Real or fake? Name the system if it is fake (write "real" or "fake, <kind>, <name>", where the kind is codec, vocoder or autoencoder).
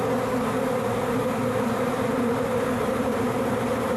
real